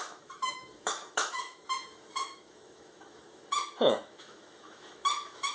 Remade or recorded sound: remade